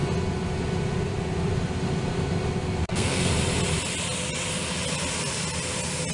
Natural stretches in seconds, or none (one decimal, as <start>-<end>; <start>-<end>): 0.0-2.8; 3.3-6.1